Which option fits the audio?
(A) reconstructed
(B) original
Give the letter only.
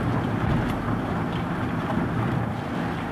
B